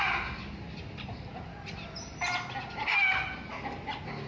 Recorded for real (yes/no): yes